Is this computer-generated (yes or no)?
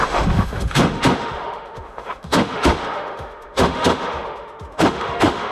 yes